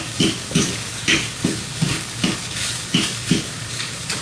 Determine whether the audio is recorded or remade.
remade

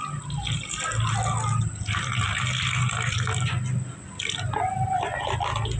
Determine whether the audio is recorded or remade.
recorded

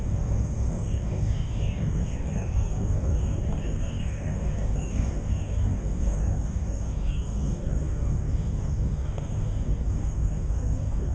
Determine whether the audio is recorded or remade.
remade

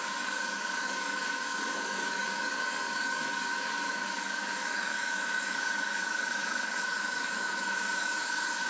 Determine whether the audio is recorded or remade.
remade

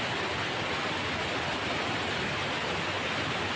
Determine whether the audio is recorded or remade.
recorded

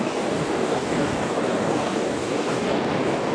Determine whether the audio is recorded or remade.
remade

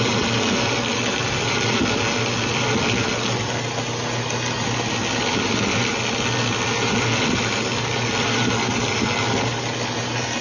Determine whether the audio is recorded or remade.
recorded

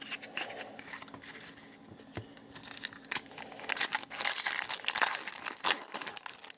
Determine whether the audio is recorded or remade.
recorded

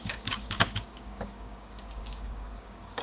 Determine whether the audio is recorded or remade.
remade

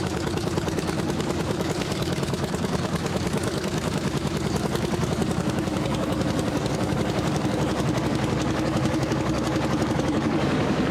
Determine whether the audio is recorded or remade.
remade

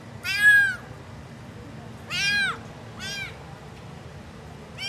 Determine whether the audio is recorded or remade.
recorded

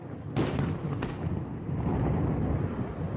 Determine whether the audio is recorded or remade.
recorded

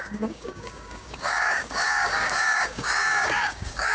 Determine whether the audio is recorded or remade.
remade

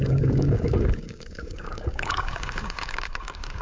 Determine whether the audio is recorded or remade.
remade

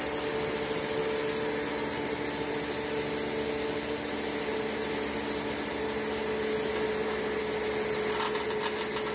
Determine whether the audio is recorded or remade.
recorded